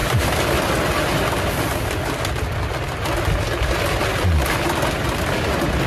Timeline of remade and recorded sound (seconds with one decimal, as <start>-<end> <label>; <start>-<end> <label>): 0.0-5.9 recorded